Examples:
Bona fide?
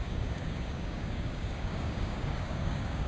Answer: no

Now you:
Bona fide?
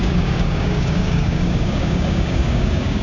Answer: no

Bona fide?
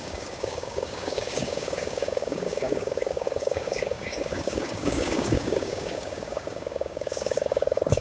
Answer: no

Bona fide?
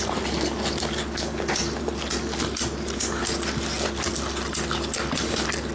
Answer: yes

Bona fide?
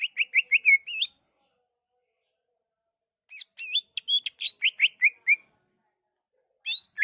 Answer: yes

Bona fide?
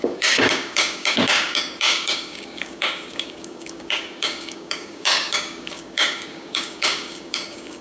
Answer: no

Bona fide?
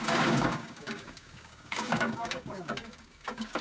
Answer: no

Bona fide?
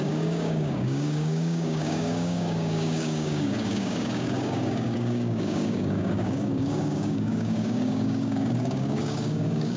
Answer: no